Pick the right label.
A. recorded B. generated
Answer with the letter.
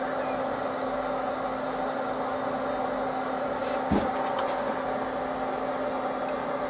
A